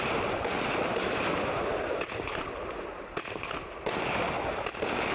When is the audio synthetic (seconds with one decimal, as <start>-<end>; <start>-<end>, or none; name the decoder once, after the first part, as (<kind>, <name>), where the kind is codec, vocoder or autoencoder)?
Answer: none